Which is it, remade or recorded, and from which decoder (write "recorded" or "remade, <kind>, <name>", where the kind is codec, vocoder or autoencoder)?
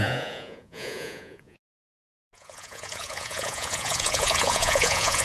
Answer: remade, vocoder, Vocos